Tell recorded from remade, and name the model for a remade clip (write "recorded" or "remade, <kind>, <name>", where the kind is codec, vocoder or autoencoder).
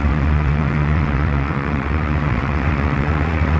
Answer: remade, vocoder, WaveNeXt